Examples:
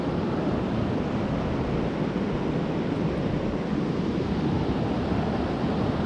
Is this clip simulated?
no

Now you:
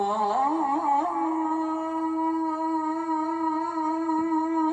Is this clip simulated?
no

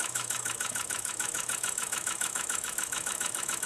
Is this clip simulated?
yes